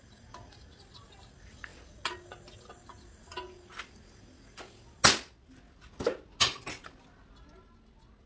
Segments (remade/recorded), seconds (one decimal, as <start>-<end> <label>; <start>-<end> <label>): 0.0-8.3 recorded